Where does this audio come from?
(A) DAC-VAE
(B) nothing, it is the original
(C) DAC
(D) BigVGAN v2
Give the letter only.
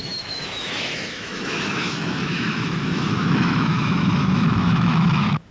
A